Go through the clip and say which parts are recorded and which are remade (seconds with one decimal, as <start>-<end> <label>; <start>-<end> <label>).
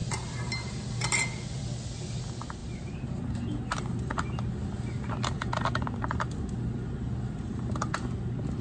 0.0-2.6 recorded; 2.6-4.4 remade; 4.4-8.6 recorded